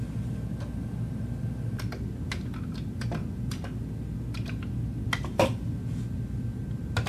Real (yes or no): yes